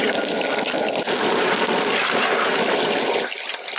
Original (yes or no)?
yes